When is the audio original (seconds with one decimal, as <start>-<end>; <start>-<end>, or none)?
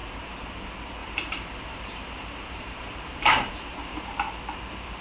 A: 0.6-1.0; 4.0-5.0